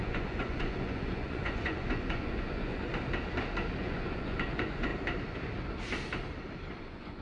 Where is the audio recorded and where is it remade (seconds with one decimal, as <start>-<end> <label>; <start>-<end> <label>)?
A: 0.0-2.9 remade; 2.9-3.8 recorded; 3.8-4.9 remade; 4.9-6.8 recorded; 6.8-7.2 remade